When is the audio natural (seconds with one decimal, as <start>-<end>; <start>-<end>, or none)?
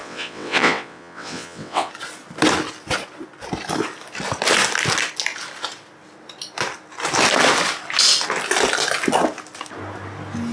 1.9-10.5